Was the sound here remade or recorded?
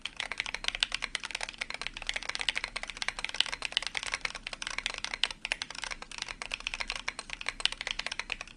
recorded